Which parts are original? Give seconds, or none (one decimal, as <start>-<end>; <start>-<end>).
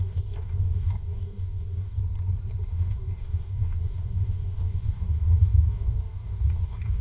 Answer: 2.0-2.7